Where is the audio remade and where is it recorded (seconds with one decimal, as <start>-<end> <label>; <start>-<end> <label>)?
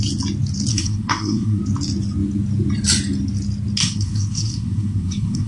0.0-0.7 recorded; 0.7-1.6 remade; 1.6-3.8 recorded; 3.8-5.5 remade